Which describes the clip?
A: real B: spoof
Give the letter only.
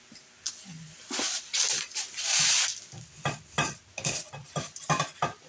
A